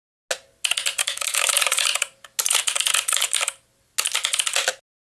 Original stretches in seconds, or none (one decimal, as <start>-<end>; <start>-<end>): 0.0-1.0; 1.5-5.1